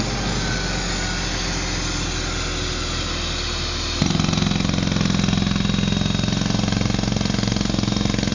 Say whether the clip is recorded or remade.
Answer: recorded